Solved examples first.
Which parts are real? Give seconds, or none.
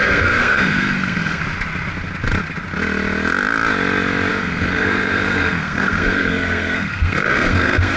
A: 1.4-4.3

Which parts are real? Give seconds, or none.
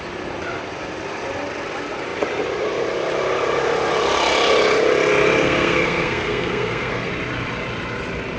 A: 0.0-5.4; 7.1-8.4